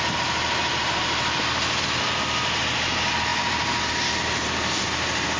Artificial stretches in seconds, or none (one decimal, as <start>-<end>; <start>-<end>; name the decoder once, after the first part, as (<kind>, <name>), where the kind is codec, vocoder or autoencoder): none